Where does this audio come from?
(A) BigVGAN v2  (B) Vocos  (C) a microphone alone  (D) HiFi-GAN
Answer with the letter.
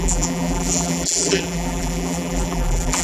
A